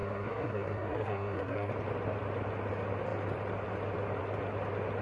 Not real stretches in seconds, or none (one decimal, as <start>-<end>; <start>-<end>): 0.0-1.7